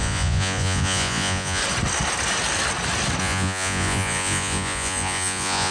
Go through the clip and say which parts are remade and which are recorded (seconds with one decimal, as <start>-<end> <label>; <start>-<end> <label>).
0.0-1.6 remade; 1.6-3.2 recorded; 3.2-5.7 remade